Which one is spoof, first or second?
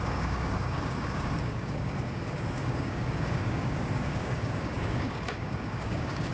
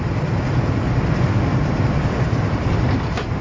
first